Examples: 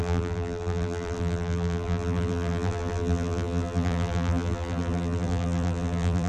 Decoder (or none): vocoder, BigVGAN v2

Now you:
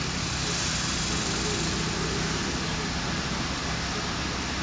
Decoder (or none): none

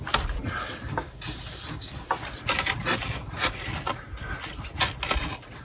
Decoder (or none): none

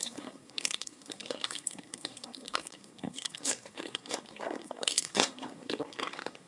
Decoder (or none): codec, SNAC